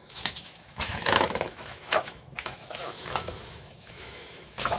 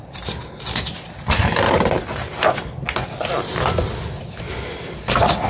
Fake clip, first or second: first